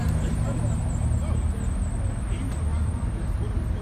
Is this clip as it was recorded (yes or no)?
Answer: yes